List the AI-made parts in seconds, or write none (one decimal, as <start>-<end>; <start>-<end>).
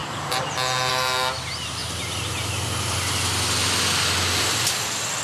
none